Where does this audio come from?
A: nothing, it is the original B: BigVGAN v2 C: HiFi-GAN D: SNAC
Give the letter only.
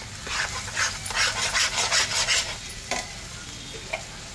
A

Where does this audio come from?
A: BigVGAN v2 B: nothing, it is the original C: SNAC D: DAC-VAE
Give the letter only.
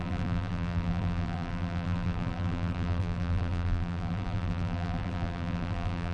A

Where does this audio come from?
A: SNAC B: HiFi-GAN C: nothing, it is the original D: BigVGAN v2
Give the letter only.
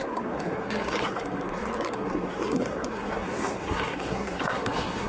A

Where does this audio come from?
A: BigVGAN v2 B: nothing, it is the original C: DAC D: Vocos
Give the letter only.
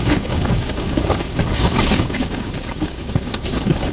C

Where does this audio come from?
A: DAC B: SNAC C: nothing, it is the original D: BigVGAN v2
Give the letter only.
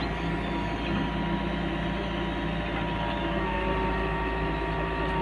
C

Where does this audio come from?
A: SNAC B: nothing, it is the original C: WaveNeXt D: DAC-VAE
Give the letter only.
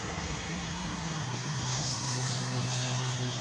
A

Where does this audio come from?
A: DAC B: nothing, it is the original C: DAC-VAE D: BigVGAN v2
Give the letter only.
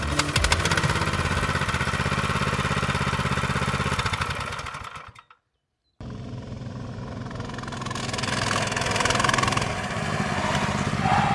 B